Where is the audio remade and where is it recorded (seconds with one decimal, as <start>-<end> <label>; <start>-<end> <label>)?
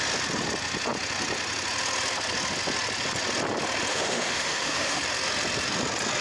0.0-3.9 recorded; 3.9-5.0 remade; 5.0-6.2 recorded